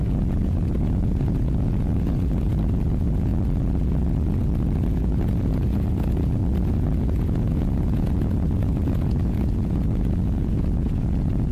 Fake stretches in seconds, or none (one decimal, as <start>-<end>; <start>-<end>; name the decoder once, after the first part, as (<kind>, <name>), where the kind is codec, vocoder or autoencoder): 0.0-3.3 (vocoder, Vocos); 4.9-6.4; 7.0-11.5